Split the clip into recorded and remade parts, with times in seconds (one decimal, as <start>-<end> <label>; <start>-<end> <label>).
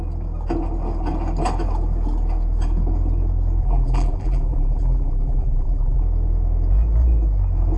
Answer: 0.0-3.6 recorded; 3.6-6.0 remade; 6.0-7.8 recorded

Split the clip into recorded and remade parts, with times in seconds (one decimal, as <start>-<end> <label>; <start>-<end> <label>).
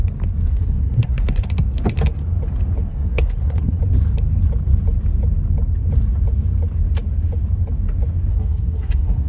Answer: 0.0-0.5 recorded; 0.5-1.5 remade; 1.5-2.9 recorded; 2.9-3.8 remade; 3.8-8.3 recorded; 8.3-9.3 remade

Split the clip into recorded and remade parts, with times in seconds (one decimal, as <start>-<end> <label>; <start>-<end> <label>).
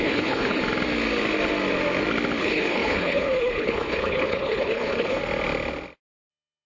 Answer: 0.0-0.6 remade; 0.6-2.4 recorded; 2.4-5.2 remade; 5.2-6.3 recorded; 6.3-6.7 remade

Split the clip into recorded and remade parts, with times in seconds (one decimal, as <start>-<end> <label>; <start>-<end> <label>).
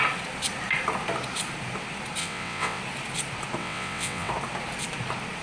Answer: 0.0-2.2 recorded; 2.2-2.8 remade; 2.8-3.6 recorded; 3.6-4.3 remade; 4.3-5.4 recorded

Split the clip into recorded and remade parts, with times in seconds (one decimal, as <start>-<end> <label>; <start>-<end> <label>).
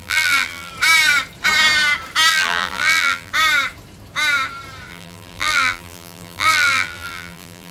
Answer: 0.0-0.7 remade; 0.7-2.3 recorded; 2.3-3.3 remade; 3.3-4.9 recorded; 4.9-7.7 remade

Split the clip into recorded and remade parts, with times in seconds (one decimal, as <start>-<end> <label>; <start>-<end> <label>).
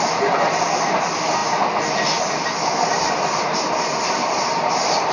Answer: 0.0-5.1 recorded